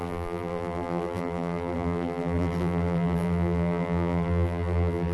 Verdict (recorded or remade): remade